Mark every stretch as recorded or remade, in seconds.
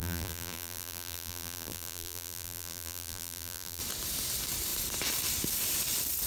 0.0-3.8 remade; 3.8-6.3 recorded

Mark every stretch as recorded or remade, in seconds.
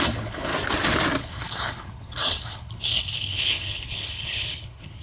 0.0-0.5 remade; 0.5-1.2 recorded; 1.2-5.0 remade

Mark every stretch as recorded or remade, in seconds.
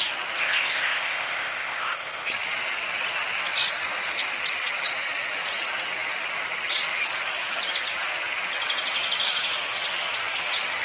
0.0-0.4 recorded; 0.4-2.3 remade; 2.3-10.8 recorded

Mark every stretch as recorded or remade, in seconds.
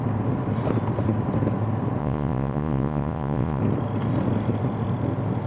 0.0-2.0 recorded; 2.0-3.6 remade; 3.6-5.5 recorded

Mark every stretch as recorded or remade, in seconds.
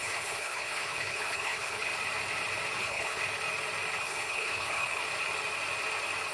0.0-1.9 remade; 1.9-2.8 recorded; 2.8-3.2 remade; 3.2-4.0 recorded; 4.0-5.0 remade; 5.0-6.3 recorded